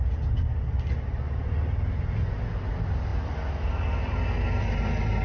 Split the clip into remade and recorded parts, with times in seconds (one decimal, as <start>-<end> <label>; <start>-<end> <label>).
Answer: 0.0-5.2 recorded